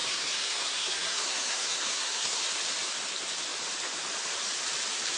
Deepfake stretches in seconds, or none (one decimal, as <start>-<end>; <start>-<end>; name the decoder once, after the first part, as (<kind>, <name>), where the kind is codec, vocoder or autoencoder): 0.0-2.4 (codec, SNAC)